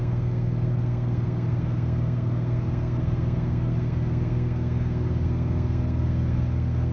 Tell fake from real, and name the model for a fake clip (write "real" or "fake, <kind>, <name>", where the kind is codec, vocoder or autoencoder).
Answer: fake, codec, SNAC